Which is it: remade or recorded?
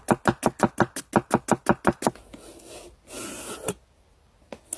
recorded